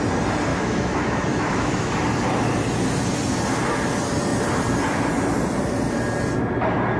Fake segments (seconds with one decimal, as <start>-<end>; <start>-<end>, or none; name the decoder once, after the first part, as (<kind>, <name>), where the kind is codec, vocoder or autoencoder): 0.5-1.9 (autoencoder, DAC-VAE)